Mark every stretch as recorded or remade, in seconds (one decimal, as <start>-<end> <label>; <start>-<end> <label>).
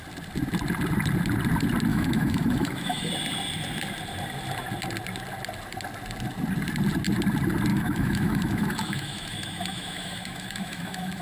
0.0-1.9 recorded; 1.9-3.1 remade; 3.1-7.7 recorded; 7.7-11.2 remade